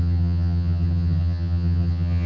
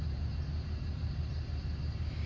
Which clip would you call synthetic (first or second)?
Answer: first